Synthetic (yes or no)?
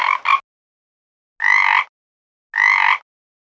no